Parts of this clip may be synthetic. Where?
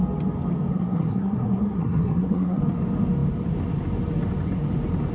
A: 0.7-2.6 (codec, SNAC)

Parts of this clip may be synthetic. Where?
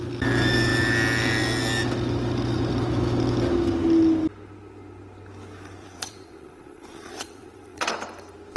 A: 5.8-7.9 (vocoder, Vocos)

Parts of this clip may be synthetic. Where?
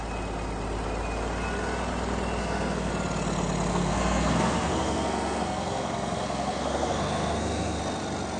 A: 2.4-2.9 (codec, SNAC); 3.7-7.8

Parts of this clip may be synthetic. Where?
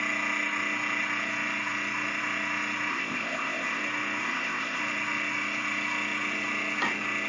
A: 2.9-3.8 (codec, ZipCodec); 4.2-4.8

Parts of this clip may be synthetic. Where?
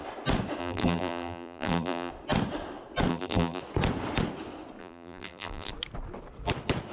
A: 0.6-2.1 (vocoder, BigVGAN v2); 3.1-3.6; 4.8-5.7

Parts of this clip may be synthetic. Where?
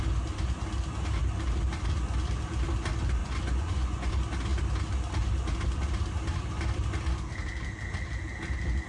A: 3.2-4.1 (vocoder, Vocos)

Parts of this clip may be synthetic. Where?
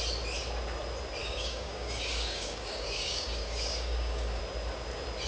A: 1.2-4.4 (codec, DAC)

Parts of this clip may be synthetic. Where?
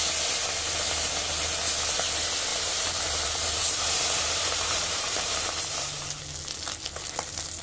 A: 2.5-6.2 (vocoder, BigVGAN v2)